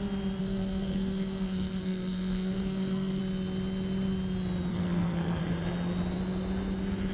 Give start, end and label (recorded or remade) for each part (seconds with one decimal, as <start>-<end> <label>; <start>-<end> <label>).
0.0-0.4 recorded; 0.4-3.2 remade; 3.2-4.7 recorded; 4.7-5.4 remade; 5.4-7.1 recorded